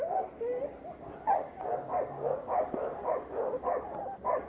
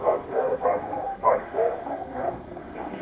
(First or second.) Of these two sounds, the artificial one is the second